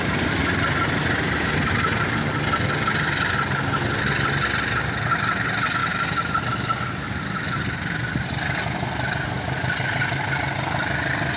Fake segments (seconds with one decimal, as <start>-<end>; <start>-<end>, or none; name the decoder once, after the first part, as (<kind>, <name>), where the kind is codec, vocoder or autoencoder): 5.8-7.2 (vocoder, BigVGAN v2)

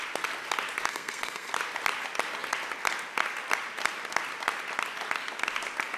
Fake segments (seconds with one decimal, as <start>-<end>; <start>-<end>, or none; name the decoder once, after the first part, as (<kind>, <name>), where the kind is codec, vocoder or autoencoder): 0.9-1.5 (codec, SNAC)

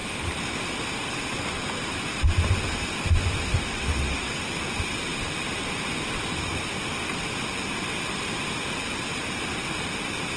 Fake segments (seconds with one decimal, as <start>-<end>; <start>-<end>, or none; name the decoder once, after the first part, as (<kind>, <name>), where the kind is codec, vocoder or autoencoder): 3.7-4.4 (vocoder, WaveNeXt)

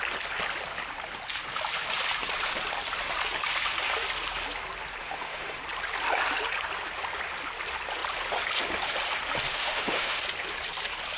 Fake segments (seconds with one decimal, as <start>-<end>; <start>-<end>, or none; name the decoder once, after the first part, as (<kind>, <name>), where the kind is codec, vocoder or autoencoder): 5.0-5.6 (autoencoder, DAC-VAE); 9.5-10.2

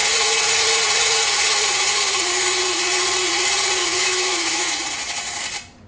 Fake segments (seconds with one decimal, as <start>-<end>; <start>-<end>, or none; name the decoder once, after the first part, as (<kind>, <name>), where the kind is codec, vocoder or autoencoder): 3.8-4.7 (autoencoder, DAC-VAE)